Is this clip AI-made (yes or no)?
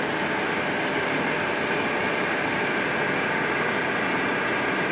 no